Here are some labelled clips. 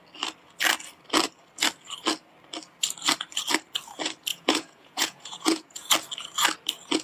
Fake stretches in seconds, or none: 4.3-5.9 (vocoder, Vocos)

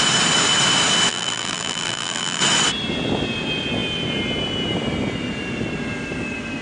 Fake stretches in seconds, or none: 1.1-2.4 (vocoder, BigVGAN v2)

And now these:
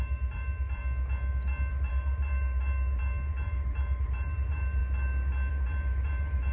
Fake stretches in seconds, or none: 0.0-0.8 (vocoder, BigVGAN v2); 1.7-4.8; 5.5-6.5

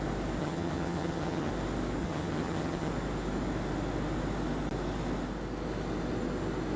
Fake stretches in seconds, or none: 0.4-1.5 (vocoder, HiFi-GAN); 2.0-2.9